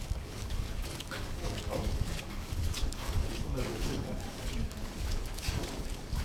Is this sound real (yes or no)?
no